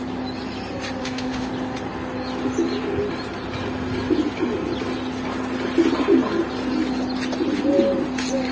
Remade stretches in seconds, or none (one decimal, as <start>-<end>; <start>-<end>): 1.0-1.5